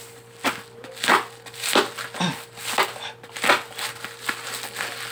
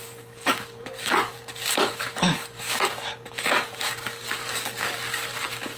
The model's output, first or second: second